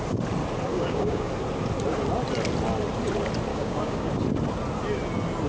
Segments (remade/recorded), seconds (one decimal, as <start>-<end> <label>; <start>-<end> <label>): 0.0-0.7 recorded; 0.7-1.3 remade; 1.3-3.5 recorded; 3.5-4.1 remade; 4.1-5.5 recorded